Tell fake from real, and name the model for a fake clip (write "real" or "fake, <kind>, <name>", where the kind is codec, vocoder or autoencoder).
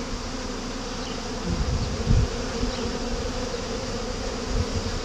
real